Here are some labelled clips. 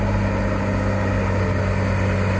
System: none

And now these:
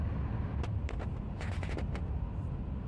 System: none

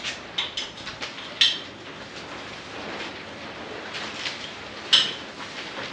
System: none